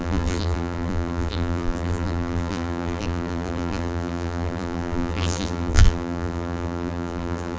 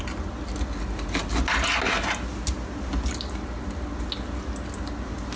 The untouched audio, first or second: second